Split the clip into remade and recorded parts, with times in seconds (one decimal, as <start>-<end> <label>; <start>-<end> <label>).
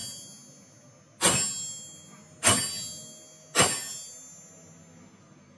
0.0-5.6 recorded